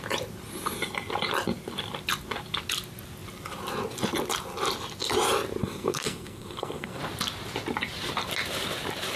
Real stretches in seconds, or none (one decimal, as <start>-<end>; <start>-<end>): 0.0-5.6; 7.0-9.2